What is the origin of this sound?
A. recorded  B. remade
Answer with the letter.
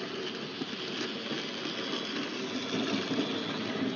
A